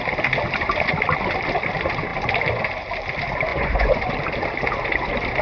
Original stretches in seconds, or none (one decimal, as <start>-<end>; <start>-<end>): 0.0-3.5; 4.1-5.4